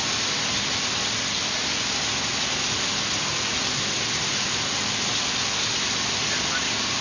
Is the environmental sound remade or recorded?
recorded